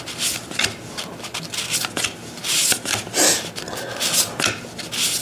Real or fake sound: real